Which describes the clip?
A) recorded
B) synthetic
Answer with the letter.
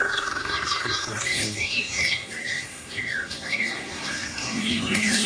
B